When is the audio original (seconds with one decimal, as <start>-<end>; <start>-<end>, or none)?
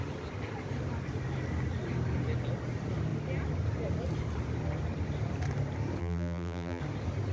0.0-6.0; 6.8-7.3